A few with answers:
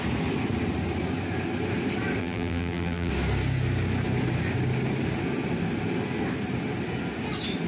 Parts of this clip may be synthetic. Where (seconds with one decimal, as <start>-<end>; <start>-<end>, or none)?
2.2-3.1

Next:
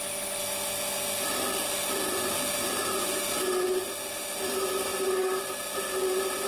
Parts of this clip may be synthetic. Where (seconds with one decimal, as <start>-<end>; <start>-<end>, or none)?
none

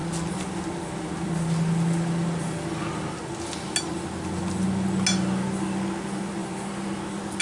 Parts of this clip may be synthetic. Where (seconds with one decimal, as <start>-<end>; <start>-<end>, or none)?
none